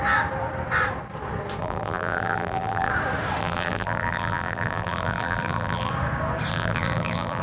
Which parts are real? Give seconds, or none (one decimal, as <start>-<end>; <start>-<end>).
0.0-1.6; 2.9-3.4; 5.9-6.5